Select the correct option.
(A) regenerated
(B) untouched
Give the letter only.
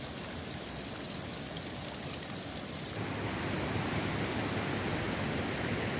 B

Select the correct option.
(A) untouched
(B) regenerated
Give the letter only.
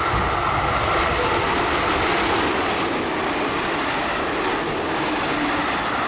A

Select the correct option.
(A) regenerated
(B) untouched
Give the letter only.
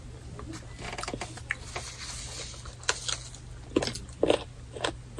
B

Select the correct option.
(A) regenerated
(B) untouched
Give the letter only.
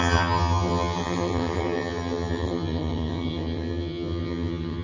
A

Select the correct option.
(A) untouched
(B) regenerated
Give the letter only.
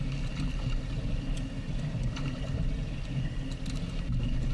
A